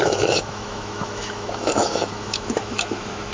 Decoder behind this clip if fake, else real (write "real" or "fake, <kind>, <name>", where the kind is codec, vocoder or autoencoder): fake, autoencoder, DAC-VAE